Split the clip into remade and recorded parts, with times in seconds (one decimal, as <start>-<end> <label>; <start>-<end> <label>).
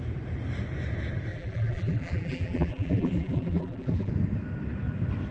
0.0-1.3 recorded; 1.3-4.1 remade; 4.1-5.3 recorded